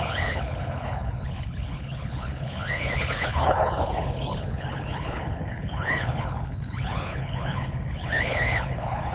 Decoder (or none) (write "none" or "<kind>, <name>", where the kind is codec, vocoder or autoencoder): codec, HILCodec